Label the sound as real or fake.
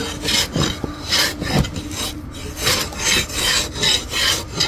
real